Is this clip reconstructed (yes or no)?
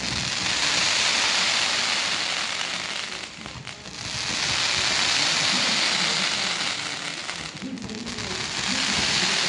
no